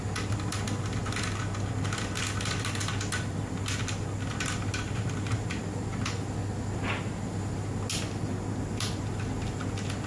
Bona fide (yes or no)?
yes